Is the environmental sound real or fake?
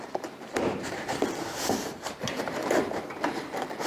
fake